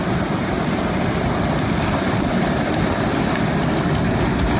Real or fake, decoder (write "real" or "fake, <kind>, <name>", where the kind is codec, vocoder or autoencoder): real